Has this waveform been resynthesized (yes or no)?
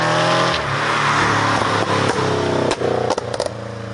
no